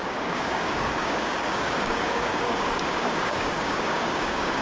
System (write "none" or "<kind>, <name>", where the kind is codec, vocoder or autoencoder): codec, DAC